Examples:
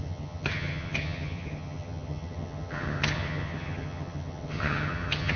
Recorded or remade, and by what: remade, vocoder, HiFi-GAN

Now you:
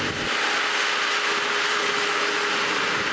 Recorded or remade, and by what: recorded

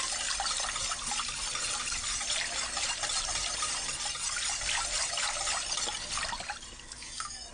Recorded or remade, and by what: recorded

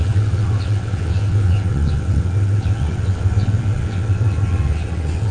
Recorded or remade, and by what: remade, vocoder, WaveNeXt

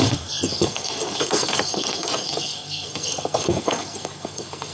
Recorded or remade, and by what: remade, codec, SNAC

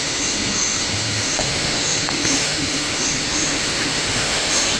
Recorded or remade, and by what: remade, autoencoder, DAC-VAE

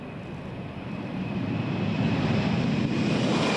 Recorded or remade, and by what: recorded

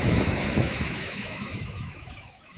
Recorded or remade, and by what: remade, autoencoder, DAC-VAE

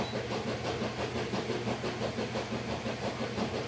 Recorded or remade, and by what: recorded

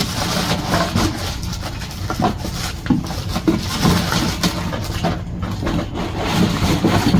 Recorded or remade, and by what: recorded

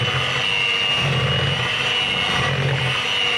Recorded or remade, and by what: recorded